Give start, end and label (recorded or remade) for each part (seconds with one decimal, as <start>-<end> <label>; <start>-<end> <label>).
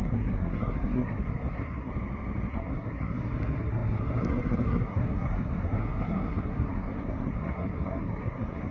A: 0.0-1.9 remade; 1.9-2.5 recorded; 2.5-8.7 remade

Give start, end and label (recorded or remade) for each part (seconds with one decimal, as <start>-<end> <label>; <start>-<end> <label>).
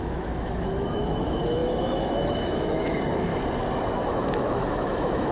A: 0.0-3.3 remade; 3.3-4.1 recorded; 4.1-5.3 remade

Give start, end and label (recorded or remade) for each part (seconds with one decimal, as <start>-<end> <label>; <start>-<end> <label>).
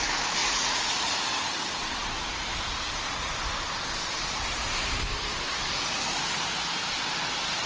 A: 0.0-0.4 recorded; 0.4-1.2 remade; 1.2-7.7 recorded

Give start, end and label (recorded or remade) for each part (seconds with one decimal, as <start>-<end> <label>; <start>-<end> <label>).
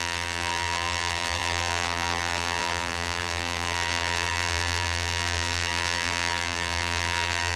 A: 0.0-7.6 remade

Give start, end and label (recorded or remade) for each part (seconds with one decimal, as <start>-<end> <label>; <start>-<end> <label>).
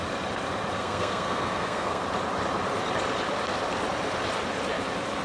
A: 0.0-0.8 recorded; 0.8-2.0 remade; 2.0-5.2 recorded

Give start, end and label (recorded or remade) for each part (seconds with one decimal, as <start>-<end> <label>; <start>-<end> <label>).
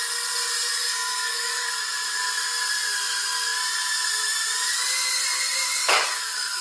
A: 0.0-0.7 recorded; 0.7-1.7 remade; 1.7-5.8 recorded; 5.8-6.6 remade